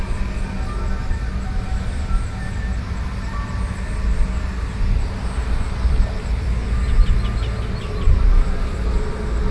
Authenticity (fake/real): real